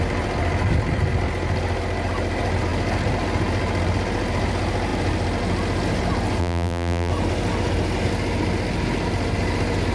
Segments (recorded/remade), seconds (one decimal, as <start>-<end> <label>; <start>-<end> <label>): 0.0-6.4 recorded; 6.4-7.1 remade; 7.1-9.9 recorded